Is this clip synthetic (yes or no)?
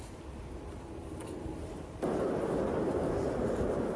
yes